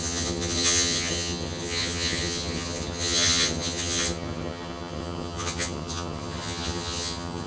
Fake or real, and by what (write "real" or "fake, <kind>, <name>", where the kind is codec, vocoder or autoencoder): fake, vocoder, HiFi-GAN